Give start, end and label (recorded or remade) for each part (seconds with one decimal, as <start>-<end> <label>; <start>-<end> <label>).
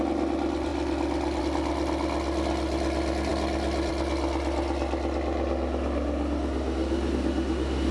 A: 0.0-7.9 recorded